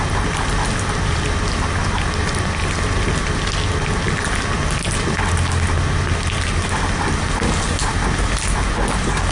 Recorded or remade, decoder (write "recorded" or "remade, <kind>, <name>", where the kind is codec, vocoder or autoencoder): recorded